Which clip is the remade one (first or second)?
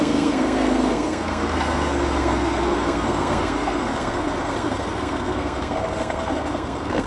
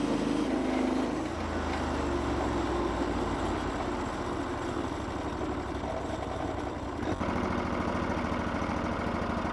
first